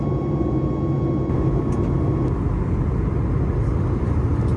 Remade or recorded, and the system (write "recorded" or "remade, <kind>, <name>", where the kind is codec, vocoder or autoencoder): recorded